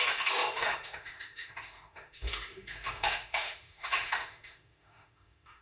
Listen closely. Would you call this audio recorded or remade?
remade